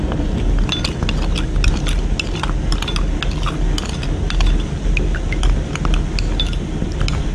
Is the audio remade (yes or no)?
no